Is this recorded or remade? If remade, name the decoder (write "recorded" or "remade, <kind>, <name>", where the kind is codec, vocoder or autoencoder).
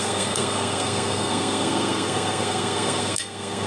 remade, codec, SNAC